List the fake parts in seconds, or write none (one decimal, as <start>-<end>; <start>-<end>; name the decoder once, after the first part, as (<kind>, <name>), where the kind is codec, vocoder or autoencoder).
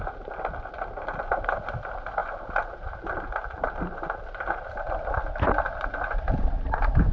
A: none